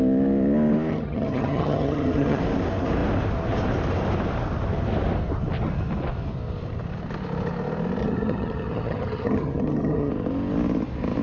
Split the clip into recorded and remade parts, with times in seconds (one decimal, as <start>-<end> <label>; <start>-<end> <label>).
0.0-0.9 recorded; 0.9-2.4 remade; 2.4-8.0 recorded; 8.0-10.1 remade; 10.1-11.2 recorded